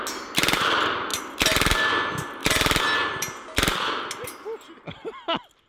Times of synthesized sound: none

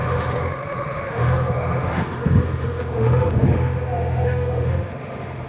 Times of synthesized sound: 0.0-5.5 (autoencoder, DAC-VAE)

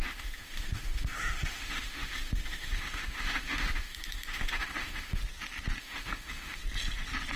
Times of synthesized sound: 0.0-5.2 (autoencoder, DAC-VAE); 5.8-6.6

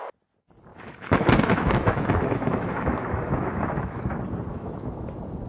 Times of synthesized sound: 0.7-4.0 (autoencoder, DAC-VAE); 4.5-5.1

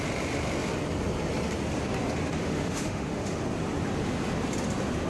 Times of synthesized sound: 2.4-3.4 (autoencoder, DAC-VAE)

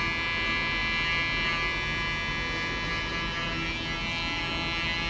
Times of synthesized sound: none

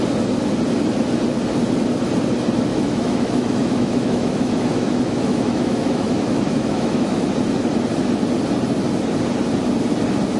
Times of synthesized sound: 2.7-7.3 (autoencoder, DAC-VAE)

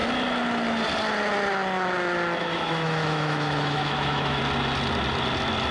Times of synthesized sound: 2.4-4.4 (autoencoder, DAC-VAE)